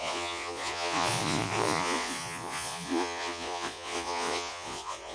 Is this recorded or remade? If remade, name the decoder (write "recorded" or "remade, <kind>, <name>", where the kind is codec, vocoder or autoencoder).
remade, vocoder, Vocos